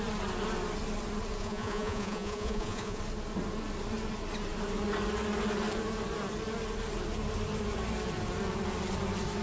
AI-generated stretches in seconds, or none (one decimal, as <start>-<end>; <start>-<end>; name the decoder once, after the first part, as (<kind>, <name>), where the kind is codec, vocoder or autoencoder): 1.4-3.0 (vocoder, Vocos)